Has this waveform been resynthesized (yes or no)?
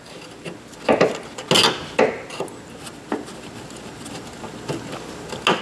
no